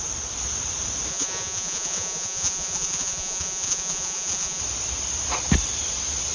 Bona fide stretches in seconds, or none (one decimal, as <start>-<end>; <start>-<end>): 0.0-1.1; 4.6-6.3